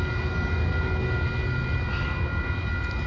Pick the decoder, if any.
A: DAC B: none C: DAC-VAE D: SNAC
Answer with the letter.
B